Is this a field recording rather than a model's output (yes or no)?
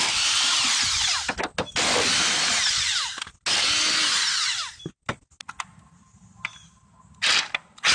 yes